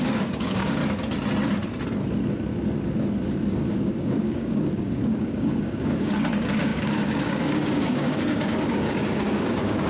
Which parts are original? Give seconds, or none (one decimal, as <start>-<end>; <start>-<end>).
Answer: 0.8-3.7